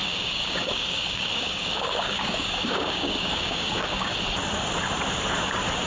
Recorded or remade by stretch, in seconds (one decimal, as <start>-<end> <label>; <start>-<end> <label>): 0.0-4.1 remade; 4.1-5.9 recorded